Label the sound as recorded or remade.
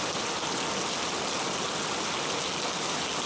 recorded